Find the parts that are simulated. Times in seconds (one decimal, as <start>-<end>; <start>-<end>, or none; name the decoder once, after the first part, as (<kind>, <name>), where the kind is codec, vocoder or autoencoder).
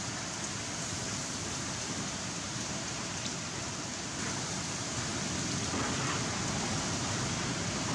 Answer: 0.0-5.1 (vocoder, BigVGAN v2); 6.4-7.9